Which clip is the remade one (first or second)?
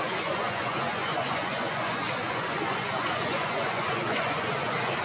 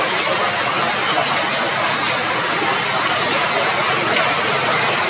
first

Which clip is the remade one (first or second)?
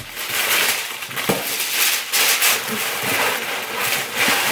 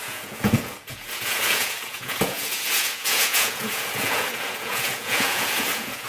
second